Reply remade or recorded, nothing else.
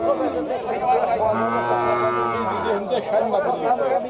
recorded